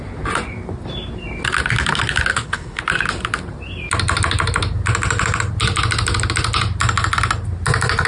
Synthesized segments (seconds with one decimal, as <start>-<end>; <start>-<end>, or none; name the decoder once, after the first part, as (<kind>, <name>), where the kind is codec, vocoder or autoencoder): 2.3-2.8 (codec, HILCodec)